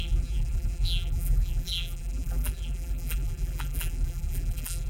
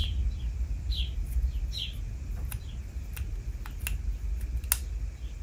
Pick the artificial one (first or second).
first